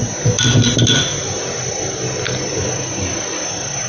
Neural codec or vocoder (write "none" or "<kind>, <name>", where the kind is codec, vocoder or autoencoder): none